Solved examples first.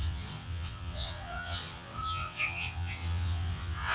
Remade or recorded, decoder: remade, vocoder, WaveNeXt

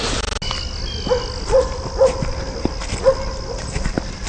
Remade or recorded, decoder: recorded